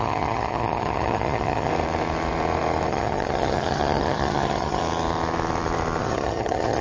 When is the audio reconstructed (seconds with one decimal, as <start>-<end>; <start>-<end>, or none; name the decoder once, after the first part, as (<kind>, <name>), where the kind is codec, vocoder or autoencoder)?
0.0-1.7 (vocoder, HiFi-GAN); 2.9-4.8; 6.0-6.8